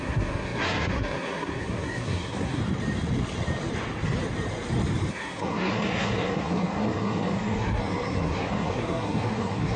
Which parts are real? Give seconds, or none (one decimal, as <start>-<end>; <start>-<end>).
2.6-5.1